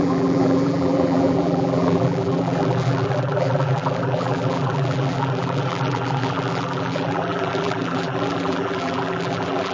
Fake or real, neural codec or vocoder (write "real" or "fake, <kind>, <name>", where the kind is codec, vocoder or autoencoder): fake, vocoder, BigVGAN v2